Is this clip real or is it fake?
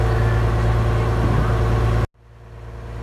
real